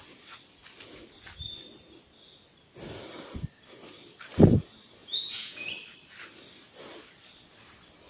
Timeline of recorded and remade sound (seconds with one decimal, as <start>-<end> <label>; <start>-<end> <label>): 0.0-5.0 recorded; 5.0-5.7 remade; 5.7-8.1 recorded